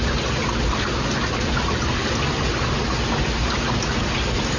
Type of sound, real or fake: real